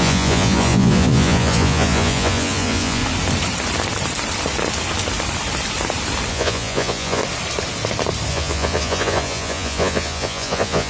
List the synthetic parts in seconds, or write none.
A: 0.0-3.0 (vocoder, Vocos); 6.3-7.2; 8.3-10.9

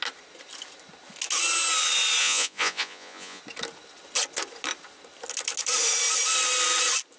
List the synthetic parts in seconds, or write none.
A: 2.2-3.4 (vocoder, Vocos)

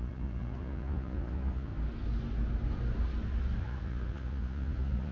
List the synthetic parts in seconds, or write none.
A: 0.0-1.7 (vocoder, Vocos); 3.6-5.1

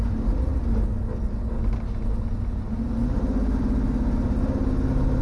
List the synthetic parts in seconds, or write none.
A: none